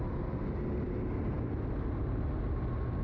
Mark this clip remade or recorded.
recorded